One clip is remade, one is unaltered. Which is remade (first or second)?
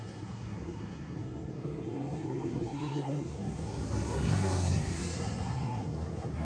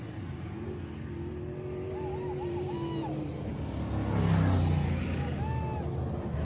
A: first